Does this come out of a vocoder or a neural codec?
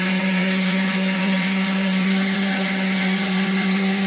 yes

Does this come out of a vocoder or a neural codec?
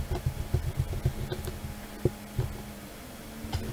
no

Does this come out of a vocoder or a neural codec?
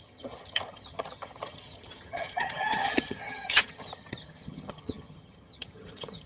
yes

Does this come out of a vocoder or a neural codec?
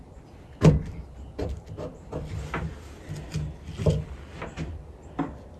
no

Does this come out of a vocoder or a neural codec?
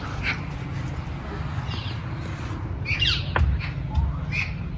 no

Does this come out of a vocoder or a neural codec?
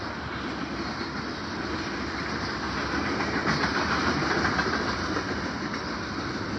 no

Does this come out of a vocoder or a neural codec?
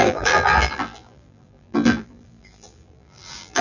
yes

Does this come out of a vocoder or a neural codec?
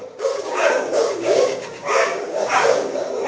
yes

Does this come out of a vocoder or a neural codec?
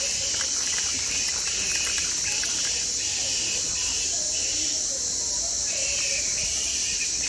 no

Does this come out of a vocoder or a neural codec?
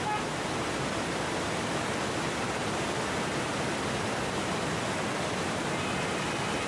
no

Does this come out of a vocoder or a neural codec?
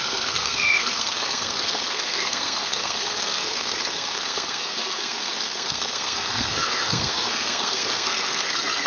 yes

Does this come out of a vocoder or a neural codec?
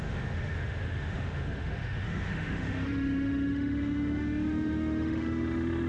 yes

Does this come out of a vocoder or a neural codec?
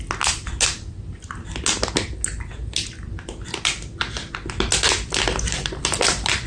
no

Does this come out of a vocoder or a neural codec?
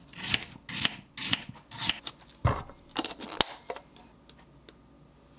no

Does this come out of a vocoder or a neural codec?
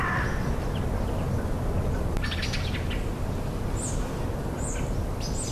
no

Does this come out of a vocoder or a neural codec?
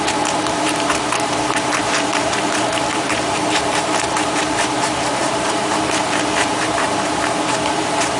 yes